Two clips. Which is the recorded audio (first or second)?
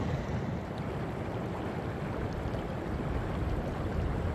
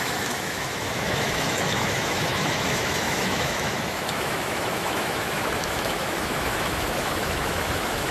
first